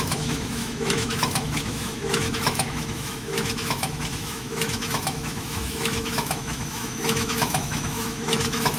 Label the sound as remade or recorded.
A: remade